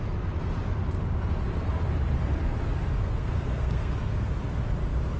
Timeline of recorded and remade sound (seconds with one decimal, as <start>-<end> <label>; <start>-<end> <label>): 0.0-3.0 recorded; 3.0-3.9 remade; 3.9-5.2 recorded